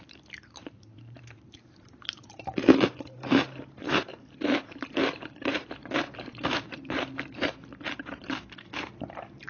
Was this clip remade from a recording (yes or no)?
yes